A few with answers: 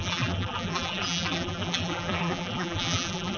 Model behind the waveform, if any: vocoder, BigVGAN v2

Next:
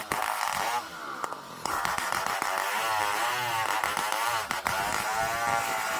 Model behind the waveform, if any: none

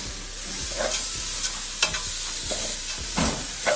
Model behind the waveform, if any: none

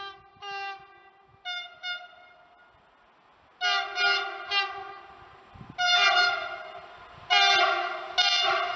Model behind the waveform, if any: none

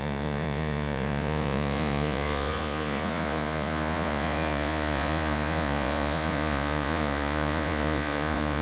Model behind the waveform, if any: vocoder, Vocos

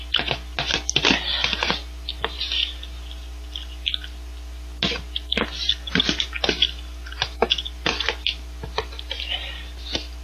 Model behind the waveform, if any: none